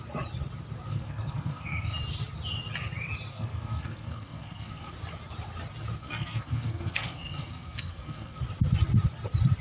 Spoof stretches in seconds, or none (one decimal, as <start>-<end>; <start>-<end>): 0.9-2.0; 3.3-4.9; 6.0-8.4